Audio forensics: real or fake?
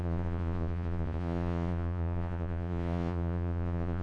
fake